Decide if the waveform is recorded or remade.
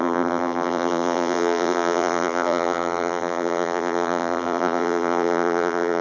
remade